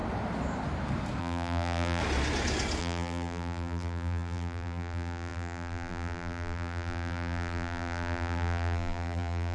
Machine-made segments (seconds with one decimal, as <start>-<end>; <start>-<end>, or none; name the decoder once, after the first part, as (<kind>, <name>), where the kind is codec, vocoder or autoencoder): 1.2-2.0 (vocoder, BigVGAN v2); 2.8-9.5